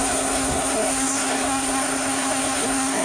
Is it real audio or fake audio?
fake